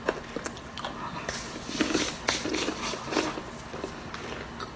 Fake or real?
real